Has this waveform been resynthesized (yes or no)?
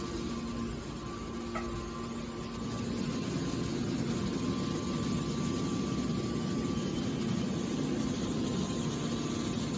no